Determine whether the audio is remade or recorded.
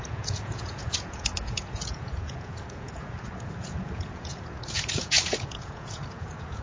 remade